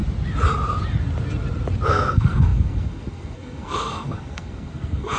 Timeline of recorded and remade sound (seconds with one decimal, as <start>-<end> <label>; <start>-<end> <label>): 0.0-1.9 recorded; 1.9-5.2 remade